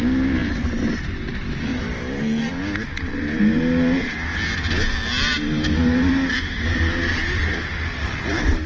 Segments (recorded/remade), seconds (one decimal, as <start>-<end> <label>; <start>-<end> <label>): 0.0-8.7 recorded